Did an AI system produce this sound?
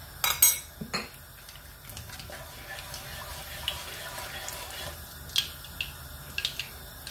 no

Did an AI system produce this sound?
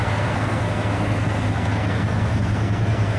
yes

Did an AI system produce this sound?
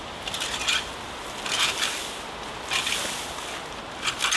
no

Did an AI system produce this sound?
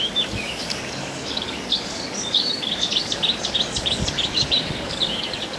yes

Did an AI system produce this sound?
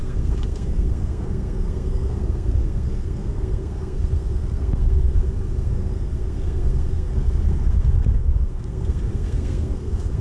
yes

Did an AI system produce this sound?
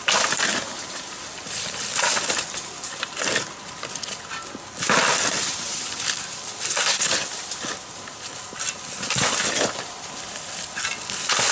no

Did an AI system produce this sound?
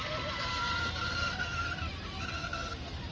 no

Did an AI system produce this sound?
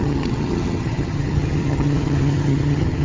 yes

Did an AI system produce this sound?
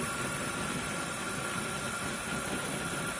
no